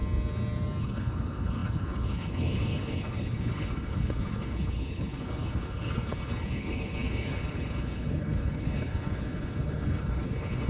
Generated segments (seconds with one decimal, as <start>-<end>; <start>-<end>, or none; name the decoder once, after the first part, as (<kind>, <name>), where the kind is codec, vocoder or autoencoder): 0.8-10.7 (codec, HILCodec)